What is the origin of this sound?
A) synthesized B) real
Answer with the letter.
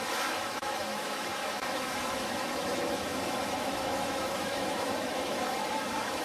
A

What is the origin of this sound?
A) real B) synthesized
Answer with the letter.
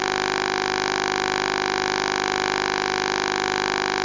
B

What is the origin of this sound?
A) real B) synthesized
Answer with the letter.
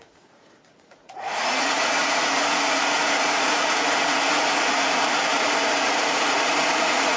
B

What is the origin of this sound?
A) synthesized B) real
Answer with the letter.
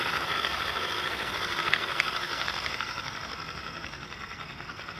A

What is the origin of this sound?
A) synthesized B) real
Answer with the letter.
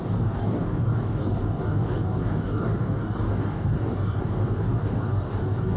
A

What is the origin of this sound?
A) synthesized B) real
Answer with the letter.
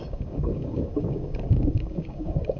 A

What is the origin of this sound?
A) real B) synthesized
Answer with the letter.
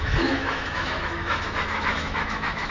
B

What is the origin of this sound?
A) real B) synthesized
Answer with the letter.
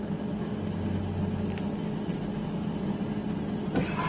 A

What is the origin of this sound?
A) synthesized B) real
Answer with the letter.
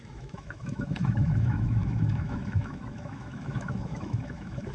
A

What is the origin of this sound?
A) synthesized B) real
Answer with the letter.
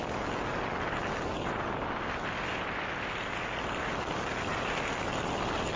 B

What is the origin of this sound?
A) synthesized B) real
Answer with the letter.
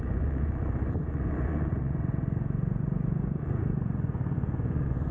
A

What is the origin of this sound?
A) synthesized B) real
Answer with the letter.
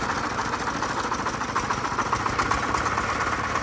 B